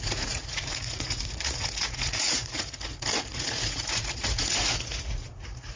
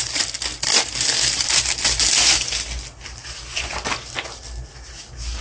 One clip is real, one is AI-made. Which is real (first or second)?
second